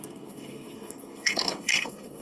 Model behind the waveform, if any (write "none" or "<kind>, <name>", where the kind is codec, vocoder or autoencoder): codec, SNAC